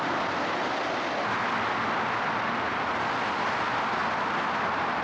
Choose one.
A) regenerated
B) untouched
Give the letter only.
B